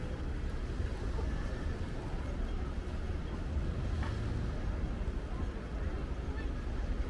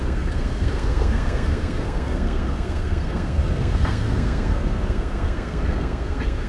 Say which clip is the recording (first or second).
first